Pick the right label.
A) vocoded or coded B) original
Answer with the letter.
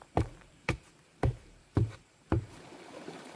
A